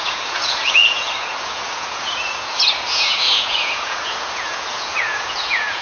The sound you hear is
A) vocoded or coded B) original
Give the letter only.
A